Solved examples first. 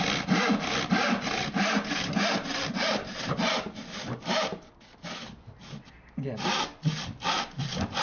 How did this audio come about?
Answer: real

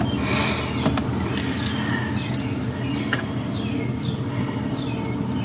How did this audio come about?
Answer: real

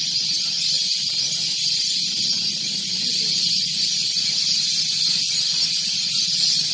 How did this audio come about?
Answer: real